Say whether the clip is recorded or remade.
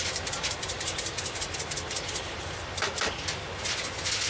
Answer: recorded